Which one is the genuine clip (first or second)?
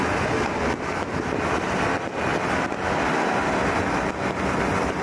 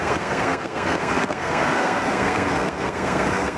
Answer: first